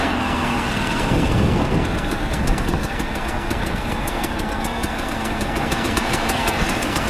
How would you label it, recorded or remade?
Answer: remade